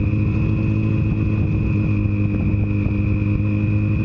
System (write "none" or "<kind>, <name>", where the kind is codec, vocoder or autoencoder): none